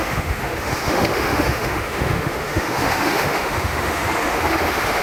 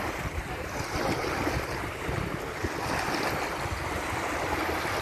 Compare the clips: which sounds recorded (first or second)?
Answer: second